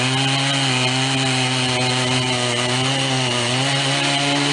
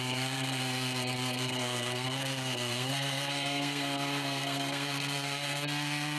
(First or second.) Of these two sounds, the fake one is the second